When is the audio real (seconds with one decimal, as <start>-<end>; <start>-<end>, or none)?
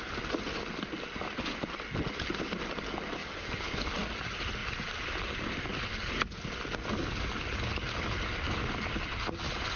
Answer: 0.0-9.8